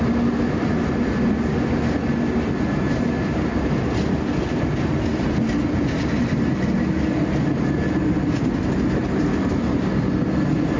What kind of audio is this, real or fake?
real